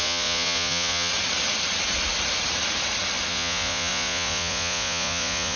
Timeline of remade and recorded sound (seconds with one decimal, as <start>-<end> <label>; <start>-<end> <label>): 0.0-1.1 remade; 1.1-3.3 recorded; 3.3-5.6 remade

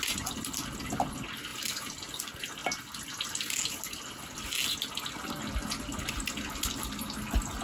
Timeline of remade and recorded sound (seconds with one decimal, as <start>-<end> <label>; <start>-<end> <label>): 0.0-7.6 recorded

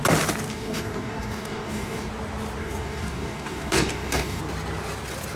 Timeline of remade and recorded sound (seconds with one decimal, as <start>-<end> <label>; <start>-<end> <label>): 0.0-0.5 recorded; 0.5-2.1 remade; 2.1-2.6 recorded; 2.6-4.4 remade; 4.4-5.4 recorded